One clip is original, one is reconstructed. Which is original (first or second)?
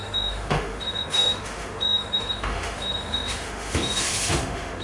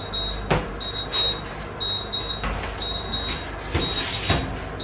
second